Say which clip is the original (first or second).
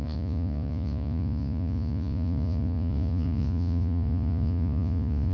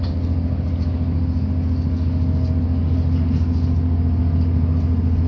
second